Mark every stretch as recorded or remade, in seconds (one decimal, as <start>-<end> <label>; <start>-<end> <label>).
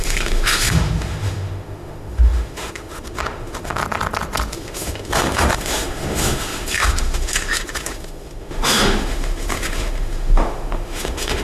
0.0-3.8 remade; 3.8-4.5 recorded; 4.5-11.4 remade